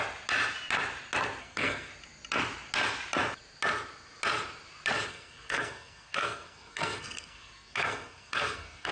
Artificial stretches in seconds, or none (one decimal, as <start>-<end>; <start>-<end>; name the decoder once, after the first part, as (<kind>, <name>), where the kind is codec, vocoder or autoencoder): 1.4-1.9 (codec, SNAC); 5.1-8.9